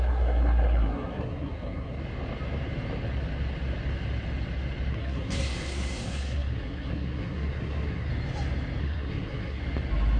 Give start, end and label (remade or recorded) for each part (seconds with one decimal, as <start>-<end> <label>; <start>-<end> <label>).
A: 0.0-1.9 remade; 1.9-4.9 recorded; 4.9-8.1 remade; 8.1-8.8 recorded; 8.8-9.6 remade; 9.6-10.2 recorded